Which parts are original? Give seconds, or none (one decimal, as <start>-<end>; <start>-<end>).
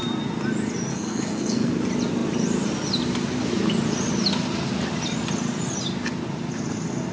0.0-0.9; 1.7-7.1